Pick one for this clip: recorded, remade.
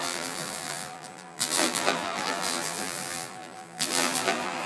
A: remade